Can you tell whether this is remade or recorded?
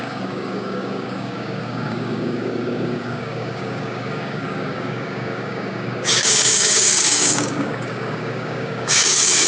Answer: remade